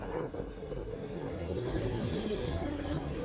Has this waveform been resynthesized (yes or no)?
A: yes